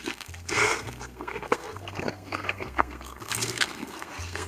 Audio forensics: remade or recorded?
remade